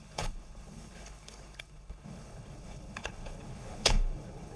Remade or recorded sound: remade